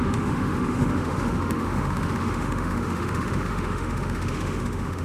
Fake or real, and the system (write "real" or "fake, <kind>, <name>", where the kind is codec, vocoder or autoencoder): fake, autoencoder, DAC-VAE